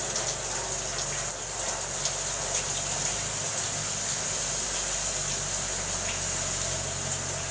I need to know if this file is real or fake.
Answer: real